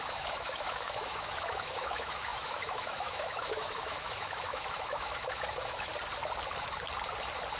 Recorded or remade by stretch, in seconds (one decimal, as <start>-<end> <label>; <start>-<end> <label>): 0.0-5.9 remade; 5.9-7.6 recorded